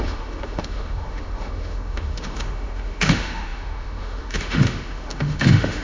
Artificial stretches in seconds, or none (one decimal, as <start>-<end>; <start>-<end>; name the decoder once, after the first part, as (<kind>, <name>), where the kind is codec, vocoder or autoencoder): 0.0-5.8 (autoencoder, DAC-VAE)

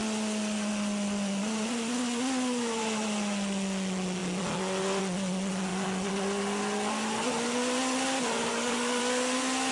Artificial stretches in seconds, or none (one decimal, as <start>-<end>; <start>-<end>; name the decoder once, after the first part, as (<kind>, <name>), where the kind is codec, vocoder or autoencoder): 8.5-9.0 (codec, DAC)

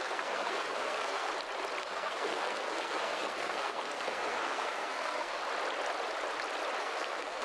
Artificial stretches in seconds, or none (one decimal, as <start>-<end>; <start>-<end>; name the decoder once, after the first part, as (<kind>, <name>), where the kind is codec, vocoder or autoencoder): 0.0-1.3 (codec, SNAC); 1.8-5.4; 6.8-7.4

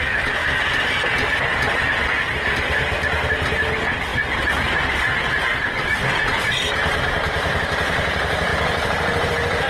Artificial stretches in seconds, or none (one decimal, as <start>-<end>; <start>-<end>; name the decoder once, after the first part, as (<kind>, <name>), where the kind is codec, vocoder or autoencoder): 0.4-3.3 (vocoder, BigVGAN v2); 4.1-7.6; 8.5-9.7

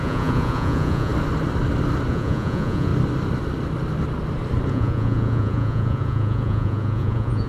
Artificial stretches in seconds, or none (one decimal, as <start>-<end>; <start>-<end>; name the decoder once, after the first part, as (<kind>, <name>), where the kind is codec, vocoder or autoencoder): 0.0-1.1 (vocoder, Vocos); 2.1-2.9; 4.7-7.5

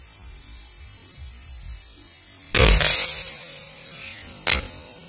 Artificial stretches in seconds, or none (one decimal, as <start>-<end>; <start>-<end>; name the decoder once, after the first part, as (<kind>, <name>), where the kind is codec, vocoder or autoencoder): none

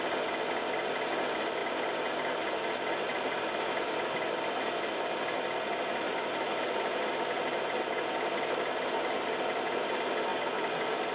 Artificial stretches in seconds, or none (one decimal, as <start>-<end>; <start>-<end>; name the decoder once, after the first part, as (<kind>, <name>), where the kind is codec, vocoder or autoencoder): none

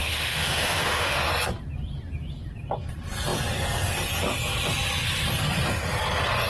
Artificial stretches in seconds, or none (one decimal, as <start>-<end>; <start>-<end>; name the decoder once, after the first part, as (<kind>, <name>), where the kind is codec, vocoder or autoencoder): 0.0-1.3 (autoencoder, DAC-VAE)